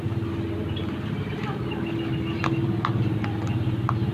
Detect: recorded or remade recorded